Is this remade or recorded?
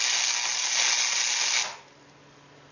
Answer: recorded